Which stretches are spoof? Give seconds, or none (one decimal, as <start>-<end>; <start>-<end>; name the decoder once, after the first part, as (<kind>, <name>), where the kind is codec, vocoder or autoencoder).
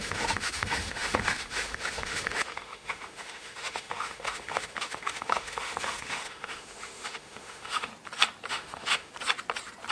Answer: 0.0-7.9 (autoencoder, DAC-VAE); 8.5-9.1